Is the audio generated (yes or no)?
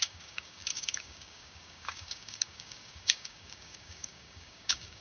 yes